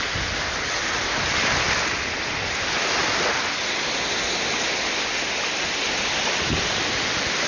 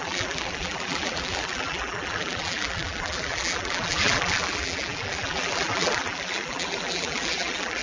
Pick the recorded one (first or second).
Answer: first